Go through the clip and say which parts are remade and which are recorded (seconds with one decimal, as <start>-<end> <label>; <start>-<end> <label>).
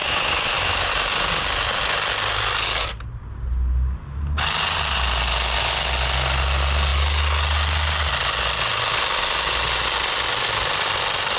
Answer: 0.0-0.9 remade; 0.9-11.4 recorded